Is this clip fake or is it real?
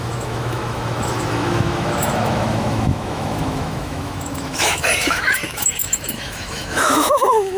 fake